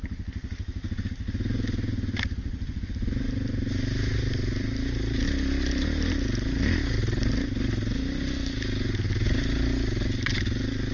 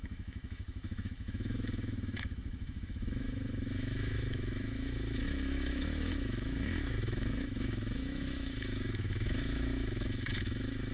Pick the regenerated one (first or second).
second